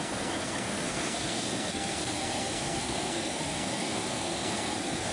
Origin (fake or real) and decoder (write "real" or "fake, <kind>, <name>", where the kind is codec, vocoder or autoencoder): fake, codec, SNAC